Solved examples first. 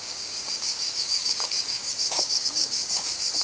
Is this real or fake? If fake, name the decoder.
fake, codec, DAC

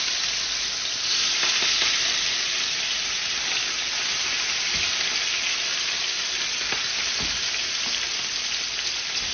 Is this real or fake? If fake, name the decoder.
real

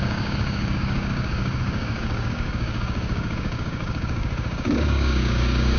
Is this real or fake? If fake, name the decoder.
fake, codec, DAC